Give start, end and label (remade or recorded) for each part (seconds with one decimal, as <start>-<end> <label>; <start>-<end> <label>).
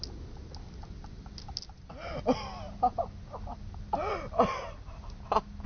0.0-5.7 recorded